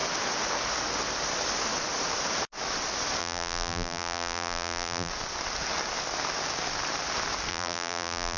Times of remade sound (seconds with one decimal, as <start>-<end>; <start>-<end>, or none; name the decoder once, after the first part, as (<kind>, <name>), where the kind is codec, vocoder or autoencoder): 3.2-5.1 (vocoder, BigVGAN v2); 7.5-8.4